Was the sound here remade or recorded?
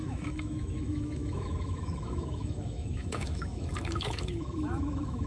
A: remade